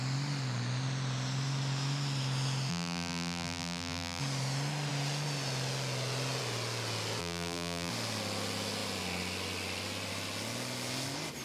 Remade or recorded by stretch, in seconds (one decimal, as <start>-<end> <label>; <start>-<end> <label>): 0.0-2.7 recorded; 2.7-4.2 remade; 4.2-7.2 recorded; 7.2-7.9 remade; 7.9-11.4 recorded